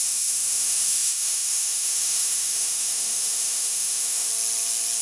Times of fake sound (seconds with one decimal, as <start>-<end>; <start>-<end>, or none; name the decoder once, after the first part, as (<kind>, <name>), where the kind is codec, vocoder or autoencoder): 0.0-4.3 (autoencoder, DAC-VAE)